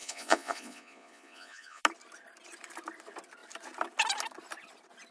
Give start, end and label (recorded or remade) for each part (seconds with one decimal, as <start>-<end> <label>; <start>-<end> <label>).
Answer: 0.0-1.8 remade; 1.8-5.1 recorded